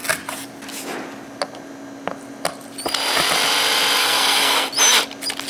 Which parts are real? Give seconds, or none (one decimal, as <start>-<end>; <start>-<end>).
0.0-4.0; 4.7-5.5